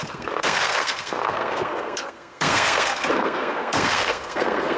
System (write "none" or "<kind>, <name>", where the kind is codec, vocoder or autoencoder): codec, SNAC